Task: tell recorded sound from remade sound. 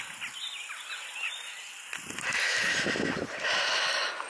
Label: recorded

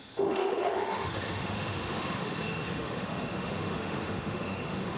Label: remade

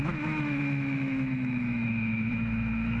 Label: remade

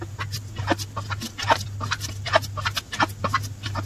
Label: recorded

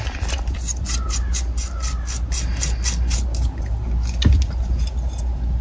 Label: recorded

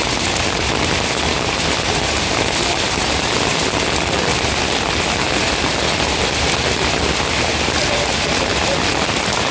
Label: recorded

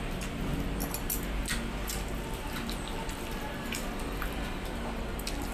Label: recorded